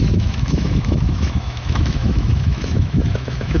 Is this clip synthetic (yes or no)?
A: yes